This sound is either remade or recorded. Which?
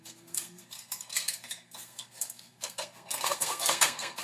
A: remade